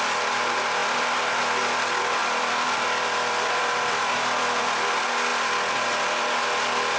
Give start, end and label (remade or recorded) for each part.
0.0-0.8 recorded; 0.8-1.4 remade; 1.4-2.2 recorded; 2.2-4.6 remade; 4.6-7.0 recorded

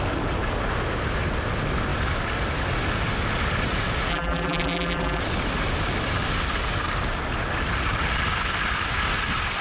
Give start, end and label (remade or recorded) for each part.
0.0-4.1 recorded; 4.1-5.2 remade; 5.2-9.6 recorded